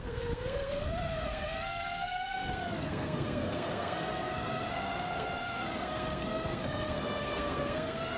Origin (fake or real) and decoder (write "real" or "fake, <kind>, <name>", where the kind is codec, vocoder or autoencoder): fake, codec, SNAC